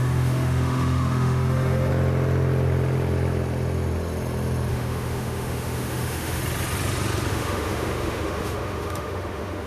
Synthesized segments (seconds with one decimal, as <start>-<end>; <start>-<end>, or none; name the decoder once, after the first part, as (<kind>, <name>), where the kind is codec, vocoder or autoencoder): 0.0-1.9 (autoencoder, DAC-VAE); 4.7-6.4; 7.3-9.7